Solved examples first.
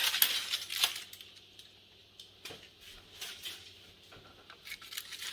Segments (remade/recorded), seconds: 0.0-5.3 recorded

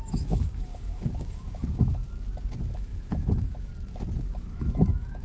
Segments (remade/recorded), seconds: 0.0-2.0 remade; 2.0-2.7 recorded; 2.7-3.7 remade; 3.7-4.2 recorded; 4.2-5.2 remade

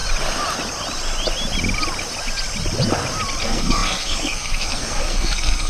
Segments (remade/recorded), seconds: 0.0-3.4 recorded; 3.4-5.7 remade

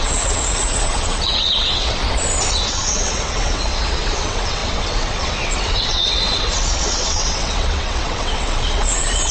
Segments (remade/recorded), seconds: 0.0-2.0 remade; 2.0-2.5 recorded; 2.5-9.3 remade